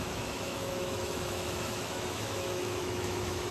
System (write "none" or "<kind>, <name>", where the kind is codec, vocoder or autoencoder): autoencoder, DAC-VAE